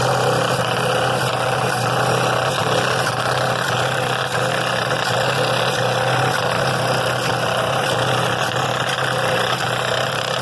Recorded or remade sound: recorded